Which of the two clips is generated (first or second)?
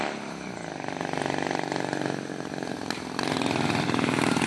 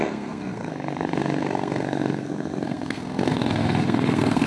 second